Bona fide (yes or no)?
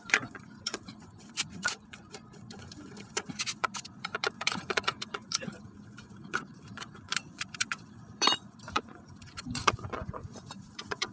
no